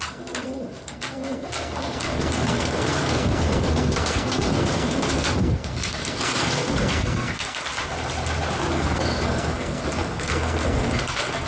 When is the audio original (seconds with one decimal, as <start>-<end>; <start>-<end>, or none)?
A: 7.7-8.7